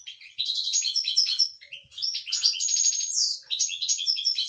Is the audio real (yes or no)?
no